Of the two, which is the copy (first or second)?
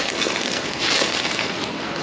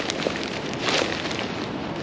first